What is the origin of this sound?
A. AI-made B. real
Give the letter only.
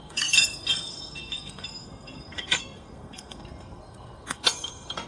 A